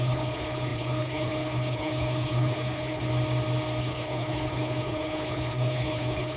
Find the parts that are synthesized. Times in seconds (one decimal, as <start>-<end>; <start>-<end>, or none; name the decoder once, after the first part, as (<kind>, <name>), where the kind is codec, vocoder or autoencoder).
0.0-3.1 (codec, HILCodec); 3.8-6.4